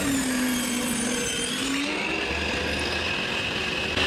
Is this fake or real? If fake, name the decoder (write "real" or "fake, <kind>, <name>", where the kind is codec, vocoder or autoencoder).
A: real